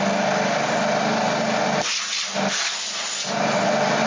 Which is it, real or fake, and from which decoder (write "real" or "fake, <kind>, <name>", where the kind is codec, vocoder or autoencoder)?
real